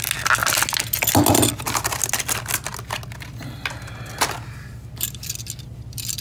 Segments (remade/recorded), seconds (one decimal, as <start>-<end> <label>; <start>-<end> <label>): 0.0-6.2 recorded

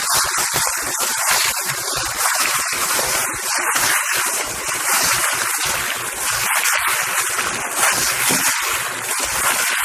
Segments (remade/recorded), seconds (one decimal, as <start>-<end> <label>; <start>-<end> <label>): 0.0-1.1 recorded; 1.1-5.7 remade; 5.7-9.8 recorded

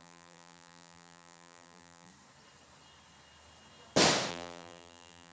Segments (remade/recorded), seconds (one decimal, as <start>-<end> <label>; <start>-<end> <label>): 0.0-2.1 remade; 2.1-4.3 recorded; 4.3-5.3 remade

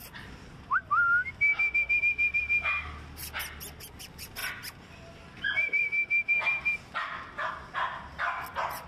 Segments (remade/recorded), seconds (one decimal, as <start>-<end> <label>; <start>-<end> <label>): 0.0-8.9 recorded

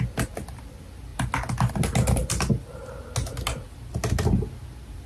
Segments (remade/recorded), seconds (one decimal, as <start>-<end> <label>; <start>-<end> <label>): 0.0-5.1 recorded

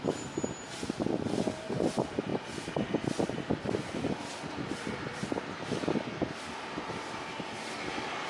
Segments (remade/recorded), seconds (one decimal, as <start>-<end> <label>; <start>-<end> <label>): 0.0-8.3 recorded